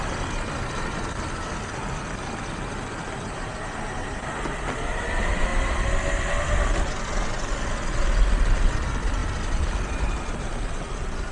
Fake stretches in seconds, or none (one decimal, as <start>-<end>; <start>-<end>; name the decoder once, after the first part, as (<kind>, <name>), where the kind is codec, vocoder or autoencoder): none